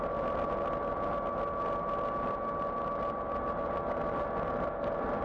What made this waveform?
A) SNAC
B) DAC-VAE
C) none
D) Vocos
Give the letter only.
C